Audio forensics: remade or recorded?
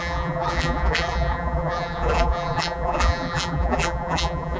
remade